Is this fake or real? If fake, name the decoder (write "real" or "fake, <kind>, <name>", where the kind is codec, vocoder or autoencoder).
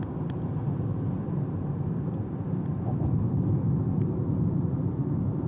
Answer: real